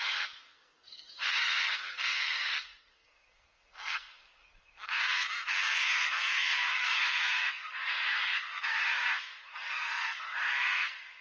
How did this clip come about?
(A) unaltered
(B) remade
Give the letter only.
B